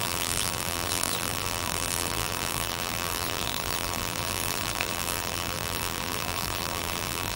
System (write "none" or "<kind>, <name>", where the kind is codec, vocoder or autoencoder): vocoder, BigVGAN v2